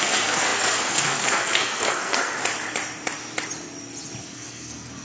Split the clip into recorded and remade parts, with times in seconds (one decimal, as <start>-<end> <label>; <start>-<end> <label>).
0.0-2.4 remade; 2.4-4.2 recorded; 4.2-5.0 remade